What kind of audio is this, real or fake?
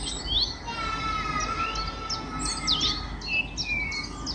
real